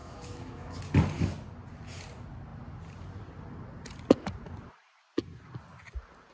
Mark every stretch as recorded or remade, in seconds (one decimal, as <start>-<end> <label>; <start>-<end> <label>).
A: 0.0-0.8 remade; 0.8-6.3 recorded